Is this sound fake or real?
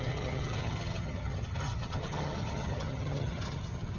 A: fake